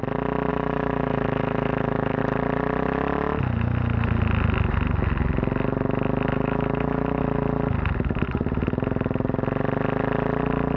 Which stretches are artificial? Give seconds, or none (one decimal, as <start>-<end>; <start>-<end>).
0.5-2.2; 6.3-7.2